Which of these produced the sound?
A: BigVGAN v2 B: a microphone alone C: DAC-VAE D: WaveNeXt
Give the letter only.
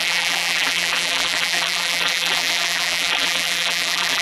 A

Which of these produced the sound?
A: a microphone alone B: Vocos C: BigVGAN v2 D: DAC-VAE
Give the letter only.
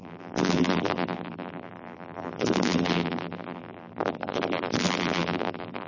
C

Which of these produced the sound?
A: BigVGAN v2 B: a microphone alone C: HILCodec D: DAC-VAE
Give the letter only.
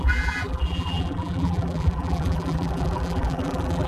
A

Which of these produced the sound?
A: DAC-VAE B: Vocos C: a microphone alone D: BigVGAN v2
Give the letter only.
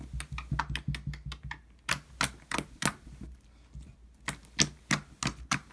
C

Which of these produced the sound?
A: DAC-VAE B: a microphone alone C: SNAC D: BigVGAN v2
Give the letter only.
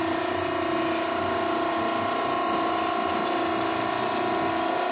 B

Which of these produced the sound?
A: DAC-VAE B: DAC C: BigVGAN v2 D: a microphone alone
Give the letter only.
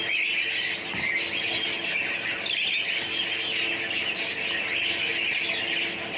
D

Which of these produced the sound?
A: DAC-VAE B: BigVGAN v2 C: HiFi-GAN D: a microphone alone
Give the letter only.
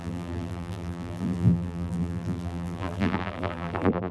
B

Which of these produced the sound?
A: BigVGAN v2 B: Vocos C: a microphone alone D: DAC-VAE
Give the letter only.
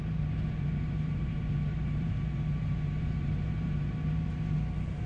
A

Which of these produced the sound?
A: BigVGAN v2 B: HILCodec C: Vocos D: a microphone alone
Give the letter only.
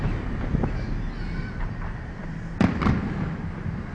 D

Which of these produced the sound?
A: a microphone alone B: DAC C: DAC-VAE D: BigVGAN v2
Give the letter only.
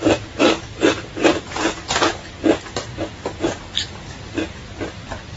D